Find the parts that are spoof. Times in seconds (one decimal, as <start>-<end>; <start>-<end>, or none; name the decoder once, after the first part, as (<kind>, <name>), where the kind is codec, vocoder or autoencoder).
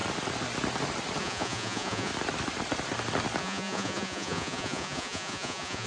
1.2-2.1 (vocoder, Vocos); 3.4-5.9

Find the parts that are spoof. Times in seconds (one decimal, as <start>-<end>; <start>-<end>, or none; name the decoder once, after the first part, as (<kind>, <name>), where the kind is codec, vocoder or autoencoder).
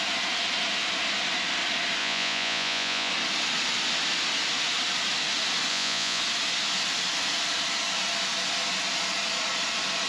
2.0-3.1 (vocoder, Vocos); 5.7-6.2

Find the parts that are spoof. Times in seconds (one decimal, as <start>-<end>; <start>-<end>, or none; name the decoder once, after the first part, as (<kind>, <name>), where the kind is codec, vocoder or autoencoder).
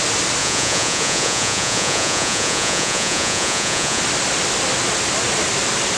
0.4-4.0 (vocoder, Vocos)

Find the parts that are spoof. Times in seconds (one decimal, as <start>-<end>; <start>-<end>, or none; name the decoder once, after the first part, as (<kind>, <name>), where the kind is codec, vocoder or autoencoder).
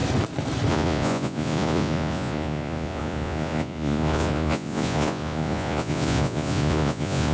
0.7-7.3 (vocoder, Vocos)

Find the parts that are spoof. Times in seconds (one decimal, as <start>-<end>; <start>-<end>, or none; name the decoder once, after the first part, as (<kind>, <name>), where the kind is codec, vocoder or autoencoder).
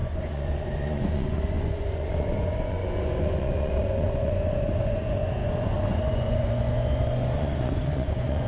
0.0-8.5 (vocoder, Vocos)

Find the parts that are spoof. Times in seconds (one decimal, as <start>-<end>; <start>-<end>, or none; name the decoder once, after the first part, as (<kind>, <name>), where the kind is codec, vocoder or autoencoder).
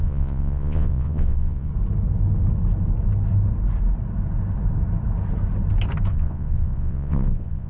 0.0-1.7 (vocoder, Vocos); 6.1-7.7